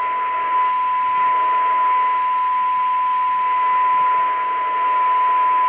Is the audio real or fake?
real